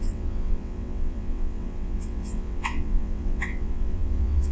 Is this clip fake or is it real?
fake